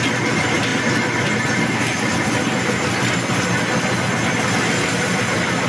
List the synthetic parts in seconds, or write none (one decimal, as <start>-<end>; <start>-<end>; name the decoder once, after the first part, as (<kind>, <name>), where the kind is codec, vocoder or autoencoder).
none